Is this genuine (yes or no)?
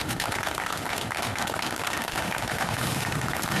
no